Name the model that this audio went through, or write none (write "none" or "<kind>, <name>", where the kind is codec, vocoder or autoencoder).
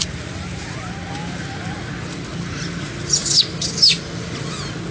none